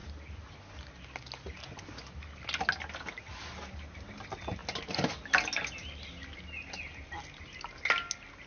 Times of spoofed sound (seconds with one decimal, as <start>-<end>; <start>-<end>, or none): none